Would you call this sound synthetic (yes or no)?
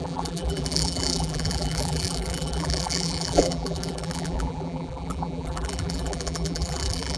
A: yes